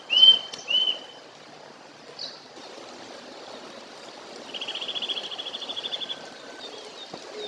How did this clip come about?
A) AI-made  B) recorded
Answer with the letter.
B